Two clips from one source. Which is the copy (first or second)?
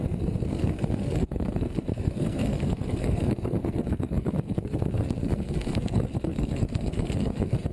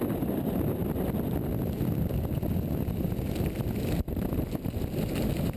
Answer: first